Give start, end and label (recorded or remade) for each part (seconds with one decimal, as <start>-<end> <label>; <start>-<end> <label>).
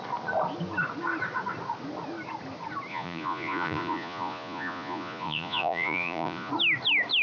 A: 0.0-2.9 recorded; 2.9-6.5 remade; 6.5-7.2 recorded